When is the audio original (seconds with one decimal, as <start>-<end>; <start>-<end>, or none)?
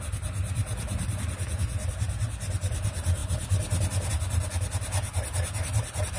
0.0-6.2